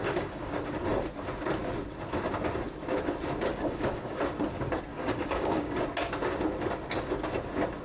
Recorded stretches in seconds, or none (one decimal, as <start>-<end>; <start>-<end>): 0.5-3.5; 4.2-4.9; 5.8-7.8